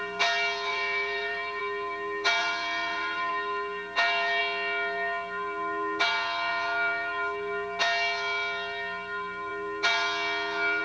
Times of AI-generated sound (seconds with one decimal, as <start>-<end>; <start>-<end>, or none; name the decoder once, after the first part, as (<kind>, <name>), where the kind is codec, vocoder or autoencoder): 0.7-1.6 (vocoder, BigVGAN v2); 2.4-3.3